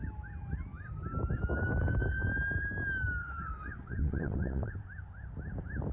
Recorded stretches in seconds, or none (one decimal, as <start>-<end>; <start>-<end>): 0.0-3.2; 4.7-5.9